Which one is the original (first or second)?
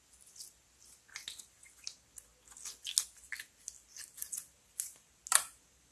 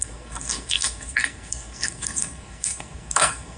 first